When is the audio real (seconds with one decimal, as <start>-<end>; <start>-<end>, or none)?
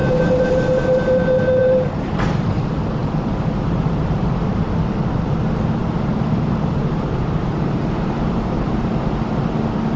0.5-1.6; 2.4-3.0; 4.7-5.8; 9.4-10.0